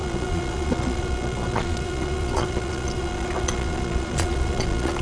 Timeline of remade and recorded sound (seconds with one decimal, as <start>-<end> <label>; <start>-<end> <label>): 0.0-5.0 remade